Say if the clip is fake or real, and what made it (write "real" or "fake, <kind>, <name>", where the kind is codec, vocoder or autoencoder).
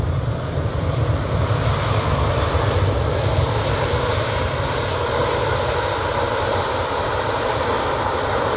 fake, vocoder, BigVGAN v2